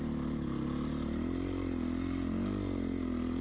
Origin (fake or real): real